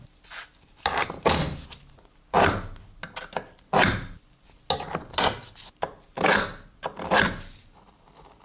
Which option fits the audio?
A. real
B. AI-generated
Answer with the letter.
A